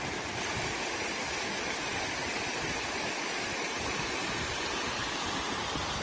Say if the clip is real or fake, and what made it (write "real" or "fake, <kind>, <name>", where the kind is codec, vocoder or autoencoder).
real